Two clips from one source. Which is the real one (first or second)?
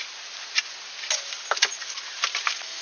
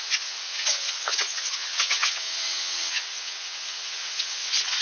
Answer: first